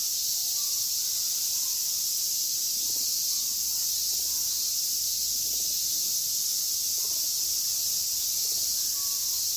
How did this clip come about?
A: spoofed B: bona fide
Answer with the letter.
B